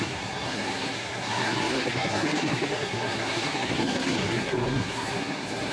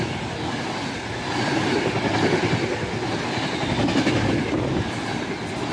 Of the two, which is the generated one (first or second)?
first